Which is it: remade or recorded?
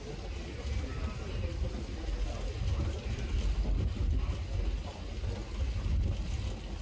recorded